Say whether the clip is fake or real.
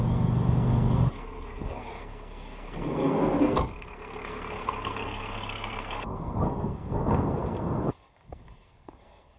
fake